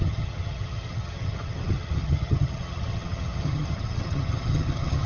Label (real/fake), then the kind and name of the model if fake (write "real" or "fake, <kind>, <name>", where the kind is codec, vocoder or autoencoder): fake, vocoder, HiFi-GAN